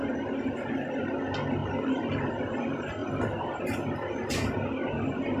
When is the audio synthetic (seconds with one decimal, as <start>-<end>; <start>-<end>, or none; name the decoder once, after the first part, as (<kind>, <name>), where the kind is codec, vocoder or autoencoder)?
1.6-2.3 (vocoder, BigVGAN v2); 3.0-3.6